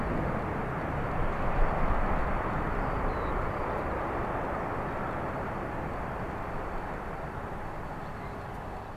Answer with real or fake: real